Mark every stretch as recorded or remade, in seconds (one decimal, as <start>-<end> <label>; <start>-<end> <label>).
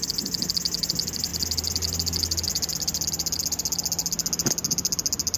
0.0-5.4 recorded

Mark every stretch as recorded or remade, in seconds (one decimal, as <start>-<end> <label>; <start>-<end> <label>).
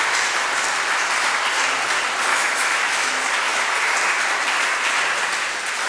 0.0-2.3 recorded; 2.3-3.1 remade; 3.1-5.9 recorded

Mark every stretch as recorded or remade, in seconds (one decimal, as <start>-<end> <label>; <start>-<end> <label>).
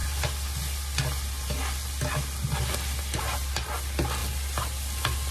0.0-5.3 recorded